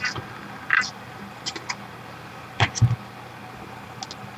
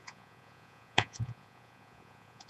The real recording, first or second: first